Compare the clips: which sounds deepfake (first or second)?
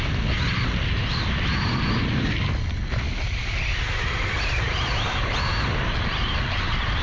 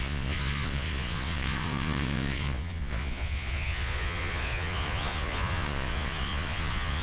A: second